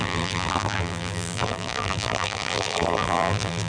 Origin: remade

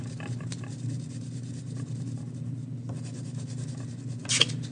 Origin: recorded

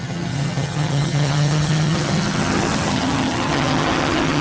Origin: remade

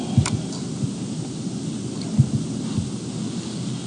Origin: recorded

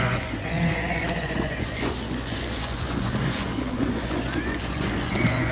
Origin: remade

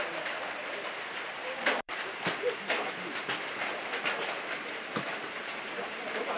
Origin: remade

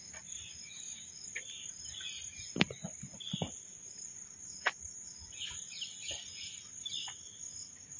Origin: recorded